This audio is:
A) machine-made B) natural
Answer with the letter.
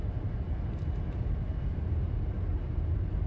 B